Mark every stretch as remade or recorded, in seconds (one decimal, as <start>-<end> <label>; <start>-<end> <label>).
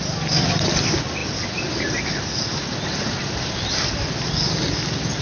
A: 0.0-5.2 recorded